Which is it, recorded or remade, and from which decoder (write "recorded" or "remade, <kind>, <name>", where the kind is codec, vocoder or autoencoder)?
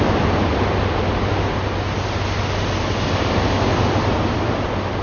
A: recorded